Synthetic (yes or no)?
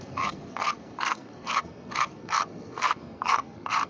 yes